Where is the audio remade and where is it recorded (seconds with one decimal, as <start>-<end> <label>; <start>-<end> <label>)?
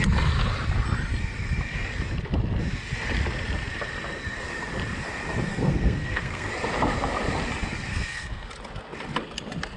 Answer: 0.0-5.5 recorded; 5.5-6.5 remade; 6.5-7.9 recorded; 7.9-8.5 remade; 8.5-9.8 recorded